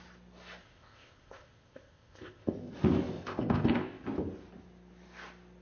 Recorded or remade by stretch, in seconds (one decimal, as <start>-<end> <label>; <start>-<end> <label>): 0.0-0.6 recorded; 0.6-2.7 remade; 2.7-3.1 recorded; 3.1-4.0 remade; 4.0-5.6 recorded